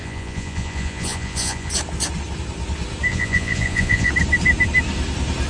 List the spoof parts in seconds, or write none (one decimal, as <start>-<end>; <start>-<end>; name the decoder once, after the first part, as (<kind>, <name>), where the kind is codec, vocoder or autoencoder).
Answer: 0.0-1.7 (vocoder, Vocos); 3.1-4.1